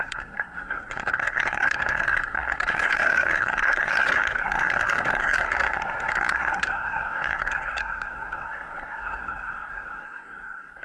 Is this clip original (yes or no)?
no